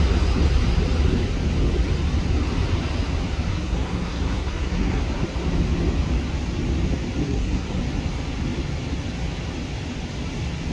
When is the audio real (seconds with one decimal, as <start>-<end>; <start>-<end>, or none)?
0.0-3.5; 5.0-7.2; 7.8-10.7